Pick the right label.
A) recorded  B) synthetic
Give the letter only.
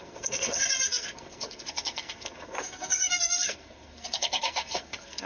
B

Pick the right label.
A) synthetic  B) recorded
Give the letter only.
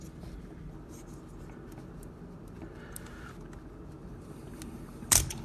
B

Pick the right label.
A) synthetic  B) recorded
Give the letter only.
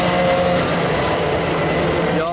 B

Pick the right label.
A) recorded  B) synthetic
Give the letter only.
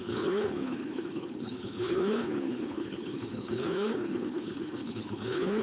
B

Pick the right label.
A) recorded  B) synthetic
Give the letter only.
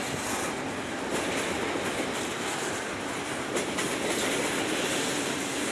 A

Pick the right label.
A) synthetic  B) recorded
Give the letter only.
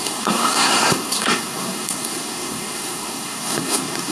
A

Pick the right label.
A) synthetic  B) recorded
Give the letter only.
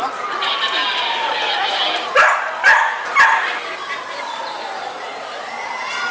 B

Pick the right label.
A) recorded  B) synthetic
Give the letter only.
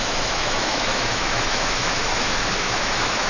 B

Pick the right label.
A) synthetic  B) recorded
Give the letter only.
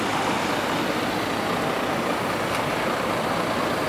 B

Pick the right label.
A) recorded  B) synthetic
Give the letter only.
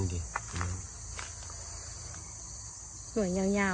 A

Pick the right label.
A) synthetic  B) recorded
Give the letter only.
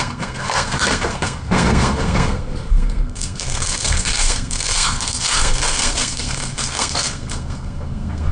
A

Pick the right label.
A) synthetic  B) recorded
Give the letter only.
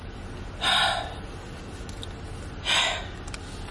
B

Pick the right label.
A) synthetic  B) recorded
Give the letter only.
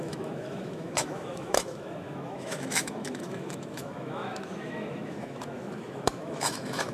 A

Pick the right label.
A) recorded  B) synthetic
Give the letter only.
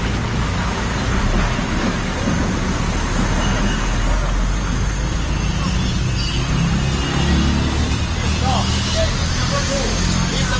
A